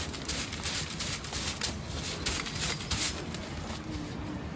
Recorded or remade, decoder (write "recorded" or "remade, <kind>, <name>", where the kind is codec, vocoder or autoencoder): recorded